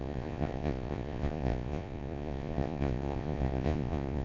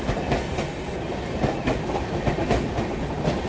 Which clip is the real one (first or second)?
second